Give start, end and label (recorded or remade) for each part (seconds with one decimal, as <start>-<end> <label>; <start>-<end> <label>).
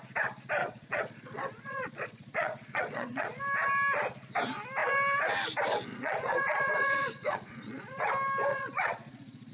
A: 0.0-0.6 recorded; 0.6-3.4 remade; 3.4-5.9 recorded; 5.9-8.1 remade; 8.1-8.5 recorded; 8.5-9.5 remade